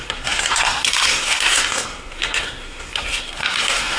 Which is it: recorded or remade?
remade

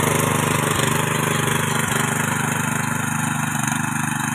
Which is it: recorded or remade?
recorded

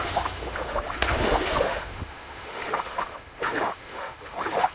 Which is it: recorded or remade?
remade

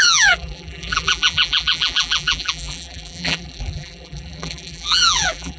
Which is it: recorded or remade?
remade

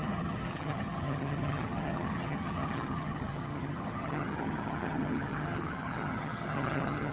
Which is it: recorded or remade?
remade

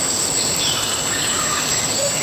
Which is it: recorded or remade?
recorded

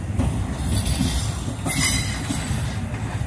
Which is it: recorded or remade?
recorded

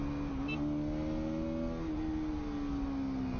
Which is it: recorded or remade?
recorded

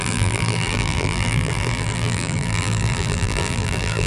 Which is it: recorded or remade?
remade